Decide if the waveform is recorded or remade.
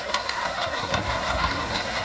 remade